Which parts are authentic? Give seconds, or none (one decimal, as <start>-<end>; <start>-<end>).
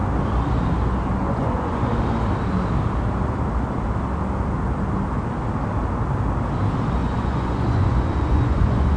0.0-1.2; 1.9-7.0